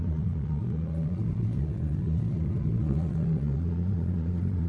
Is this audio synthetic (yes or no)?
yes